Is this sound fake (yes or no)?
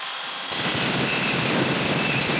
no